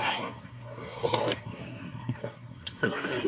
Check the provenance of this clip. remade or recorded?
remade